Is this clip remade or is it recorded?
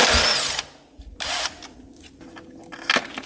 recorded